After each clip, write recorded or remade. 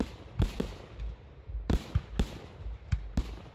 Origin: recorded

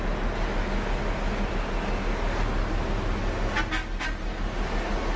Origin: recorded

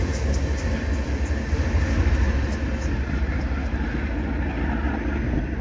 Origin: recorded